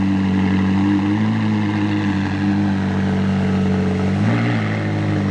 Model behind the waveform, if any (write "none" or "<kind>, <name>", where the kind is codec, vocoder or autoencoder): none